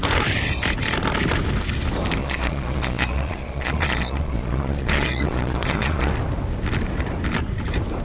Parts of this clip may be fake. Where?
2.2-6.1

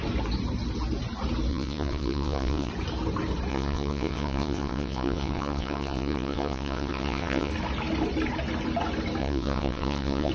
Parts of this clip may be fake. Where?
1.5-2.7; 3.5-7.5; 9.2-10.3

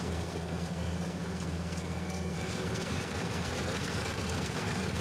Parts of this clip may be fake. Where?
0.0-5.0